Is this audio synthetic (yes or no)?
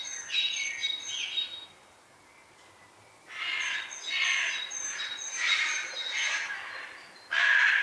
no